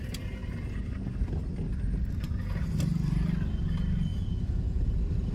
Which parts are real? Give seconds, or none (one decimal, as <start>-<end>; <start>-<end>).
0.0-4.1; 4.8-5.3